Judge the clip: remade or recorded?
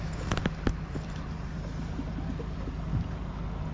recorded